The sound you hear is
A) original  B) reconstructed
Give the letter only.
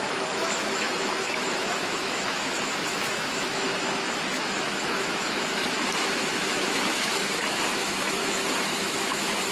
B